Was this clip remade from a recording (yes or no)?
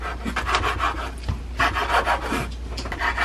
no